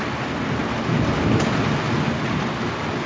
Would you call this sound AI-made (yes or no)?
no